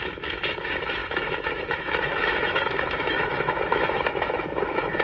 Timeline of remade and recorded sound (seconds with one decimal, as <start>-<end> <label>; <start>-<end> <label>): 0.0-5.0 remade